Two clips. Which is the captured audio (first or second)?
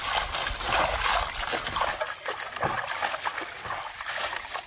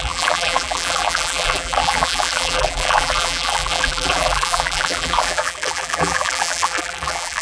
first